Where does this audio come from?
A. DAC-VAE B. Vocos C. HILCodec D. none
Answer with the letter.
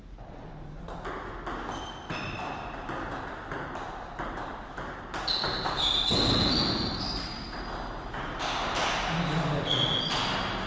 D